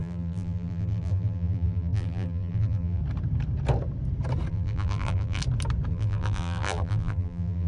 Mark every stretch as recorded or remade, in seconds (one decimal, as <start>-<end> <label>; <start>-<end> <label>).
0.0-3.0 remade; 3.0-4.5 recorded; 4.5-5.4 remade; 5.4-5.9 recorded; 5.9-7.7 remade

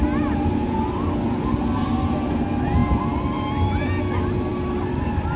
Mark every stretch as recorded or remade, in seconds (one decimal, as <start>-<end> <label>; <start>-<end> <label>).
0.0-5.4 recorded

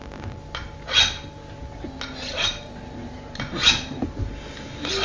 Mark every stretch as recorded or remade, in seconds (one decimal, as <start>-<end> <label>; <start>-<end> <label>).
0.0-5.0 recorded

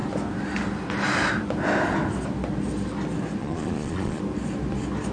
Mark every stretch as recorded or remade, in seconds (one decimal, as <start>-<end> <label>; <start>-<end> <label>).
0.0-3.4 recorded; 3.4-4.2 remade; 4.2-5.1 recorded

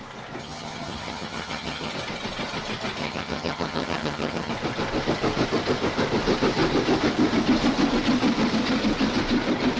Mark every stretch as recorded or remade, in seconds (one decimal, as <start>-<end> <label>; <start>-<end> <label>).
0.0-0.4 recorded; 0.4-1.9 remade; 1.9-3.0 recorded; 3.0-4.5 remade; 4.5-9.8 recorded

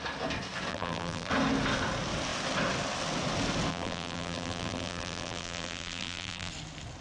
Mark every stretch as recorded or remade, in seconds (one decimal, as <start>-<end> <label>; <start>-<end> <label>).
0.0-0.7 recorded; 0.7-1.3 remade; 1.3-3.7 recorded; 3.7-6.5 remade; 6.5-7.0 recorded

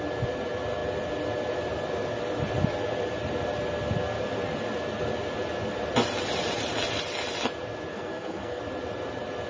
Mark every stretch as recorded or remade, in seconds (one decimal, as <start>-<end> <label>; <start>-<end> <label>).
0.0-7.9 recorded; 7.9-8.6 remade; 8.6-9.5 recorded

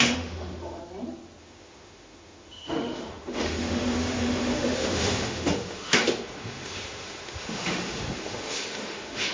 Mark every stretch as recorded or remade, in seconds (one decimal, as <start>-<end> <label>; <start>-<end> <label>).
0.0-0.8 remade; 0.8-1.4 recorded; 1.4-9.3 remade